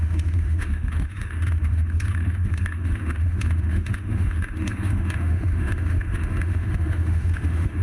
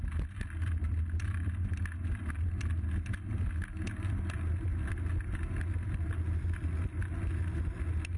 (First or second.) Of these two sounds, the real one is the second